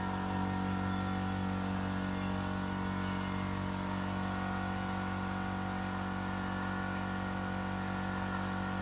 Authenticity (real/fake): real